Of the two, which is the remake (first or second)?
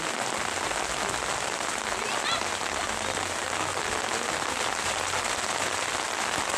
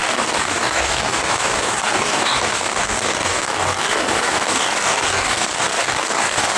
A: second